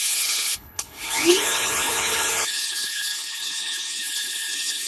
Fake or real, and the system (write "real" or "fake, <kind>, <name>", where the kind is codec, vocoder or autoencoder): fake, codec, HILCodec